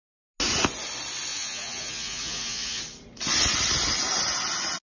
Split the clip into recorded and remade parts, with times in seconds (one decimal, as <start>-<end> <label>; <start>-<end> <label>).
0.0-1.3 recorded; 1.3-2.8 remade; 2.8-5.0 recorded